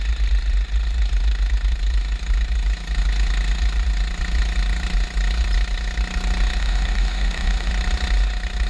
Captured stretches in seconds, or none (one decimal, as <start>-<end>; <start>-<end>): 0.0-6.6; 7.7-8.7